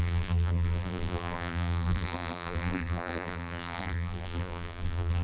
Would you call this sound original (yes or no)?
no